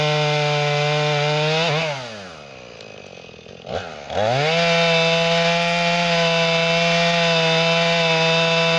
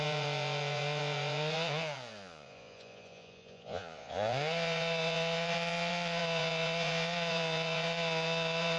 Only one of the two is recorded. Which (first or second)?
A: first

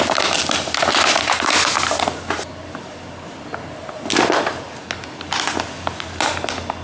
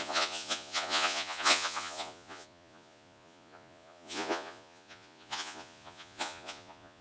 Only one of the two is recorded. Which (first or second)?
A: first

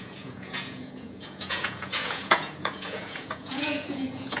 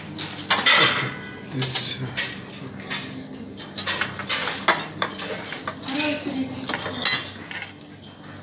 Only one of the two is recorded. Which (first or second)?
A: second